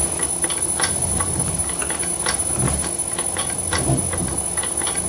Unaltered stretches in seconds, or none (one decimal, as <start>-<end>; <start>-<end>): 0.0-5.1